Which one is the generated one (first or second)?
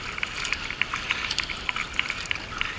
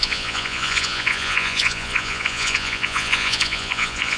second